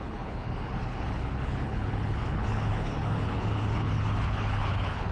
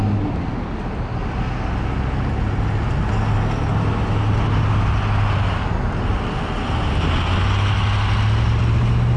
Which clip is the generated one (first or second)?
first